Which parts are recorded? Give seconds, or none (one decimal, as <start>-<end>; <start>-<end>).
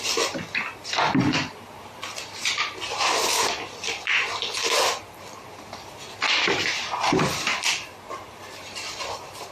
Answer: none